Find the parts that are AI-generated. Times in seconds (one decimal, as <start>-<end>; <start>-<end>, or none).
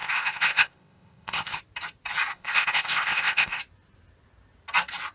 0.0-1.6; 2.3-3.6